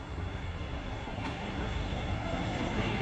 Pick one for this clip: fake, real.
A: fake